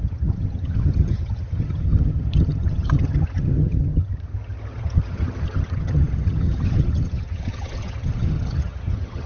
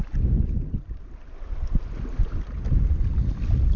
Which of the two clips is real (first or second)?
second